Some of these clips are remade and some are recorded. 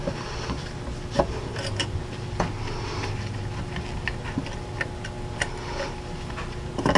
recorded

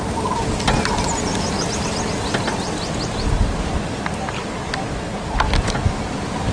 recorded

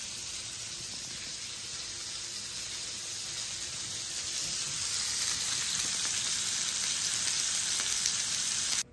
recorded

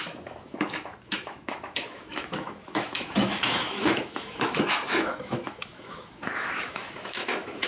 remade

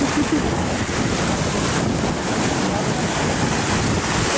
recorded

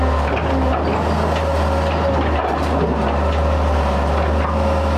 recorded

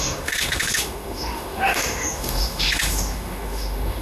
remade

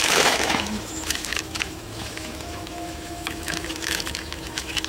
remade